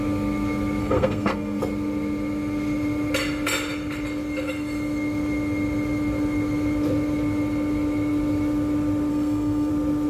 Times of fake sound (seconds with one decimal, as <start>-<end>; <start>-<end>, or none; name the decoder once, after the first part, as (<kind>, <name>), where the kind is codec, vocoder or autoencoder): 0.8-1.6 (codec, SNAC); 9.1-9.7